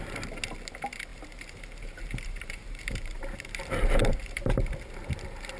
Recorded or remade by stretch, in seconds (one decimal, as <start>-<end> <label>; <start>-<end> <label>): 0.0-1.1 recorded; 1.1-4.5 remade; 4.5-5.6 recorded